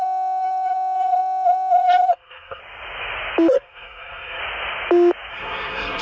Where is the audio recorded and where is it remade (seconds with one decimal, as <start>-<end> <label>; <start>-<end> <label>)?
0.0-2.6 remade; 2.6-3.5 recorded; 3.5-4.4 remade; 4.4-5.3 recorded; 5.3-6.0 remade